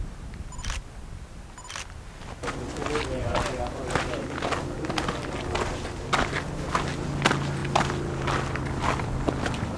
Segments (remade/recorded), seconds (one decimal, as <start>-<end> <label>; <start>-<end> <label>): 0.0-9.8 recorded